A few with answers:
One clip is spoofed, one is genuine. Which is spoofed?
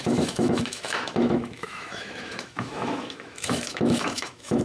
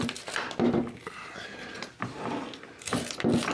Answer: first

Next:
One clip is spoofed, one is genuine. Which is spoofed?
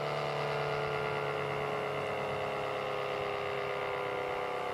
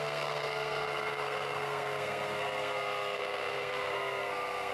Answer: second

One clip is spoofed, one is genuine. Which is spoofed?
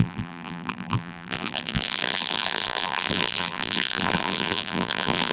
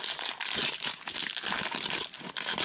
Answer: first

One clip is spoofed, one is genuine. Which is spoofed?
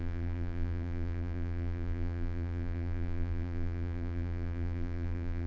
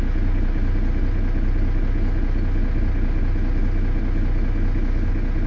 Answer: first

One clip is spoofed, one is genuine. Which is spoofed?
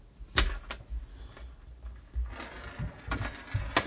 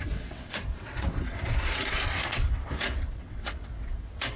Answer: second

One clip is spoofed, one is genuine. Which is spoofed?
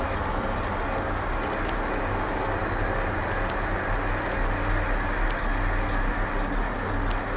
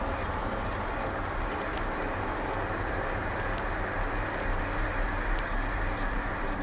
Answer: second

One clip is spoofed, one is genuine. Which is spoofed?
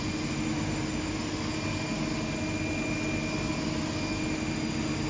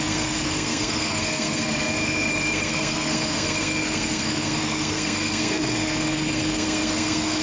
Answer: second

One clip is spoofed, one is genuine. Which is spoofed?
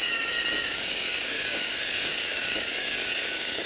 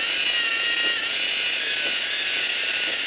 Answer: first